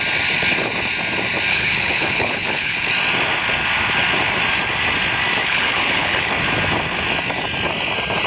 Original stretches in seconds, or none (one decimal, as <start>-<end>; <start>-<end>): 0.0-1.5; 2.9-5.4; 6.3-8.3